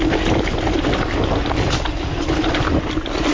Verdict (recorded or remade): recorded